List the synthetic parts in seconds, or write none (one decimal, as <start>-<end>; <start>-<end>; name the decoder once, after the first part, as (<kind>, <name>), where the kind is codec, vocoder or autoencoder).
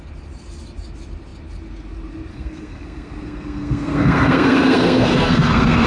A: 2.3-5.9 (codec, SNAC)